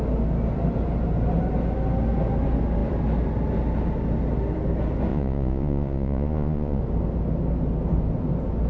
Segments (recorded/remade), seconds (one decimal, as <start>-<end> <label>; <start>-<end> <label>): 0.0-5.1 recorded; 5.1-6.8 remade; 6.8-8.7 recorded